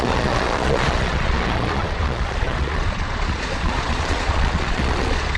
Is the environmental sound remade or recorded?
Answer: remade